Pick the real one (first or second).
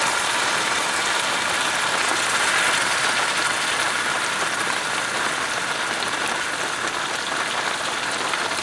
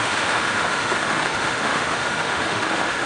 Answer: first